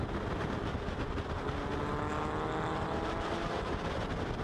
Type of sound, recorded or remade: recorded